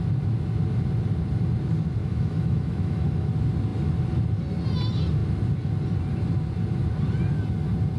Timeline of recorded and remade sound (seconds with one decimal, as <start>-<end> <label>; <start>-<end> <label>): 0.0-2.0 recorded; 2.0-3.3 remade; 3.3-8.0 recorded